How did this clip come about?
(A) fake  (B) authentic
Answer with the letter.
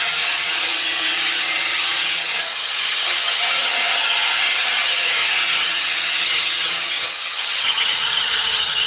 A